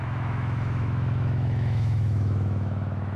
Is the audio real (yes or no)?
no